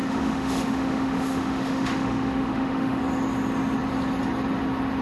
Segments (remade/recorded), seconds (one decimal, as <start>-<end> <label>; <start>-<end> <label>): 0.0-3.0 remade; 3.0-5.0 recorded

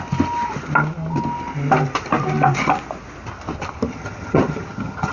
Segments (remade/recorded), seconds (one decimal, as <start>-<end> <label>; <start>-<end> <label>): 0.0-3.9 recorded; 3.9-5.1 remade

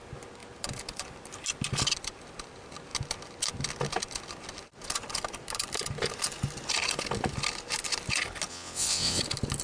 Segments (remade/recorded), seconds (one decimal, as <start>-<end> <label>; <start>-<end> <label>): 0.0-8.5 recorded; 8.5-9.2 remade; 9.2-9.6 recorded

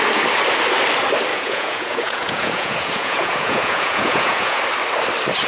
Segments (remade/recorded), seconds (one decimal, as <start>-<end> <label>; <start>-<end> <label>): 0.0-1.3 recorded; 1.3-4.6 remade; 4.6-5.5 recorded

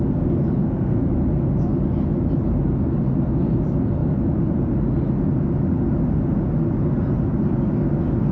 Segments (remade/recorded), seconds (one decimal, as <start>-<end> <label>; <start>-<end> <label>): 0.0-0.6 recorded; 0.6-1.1 remade; 1.1-8.3 recorded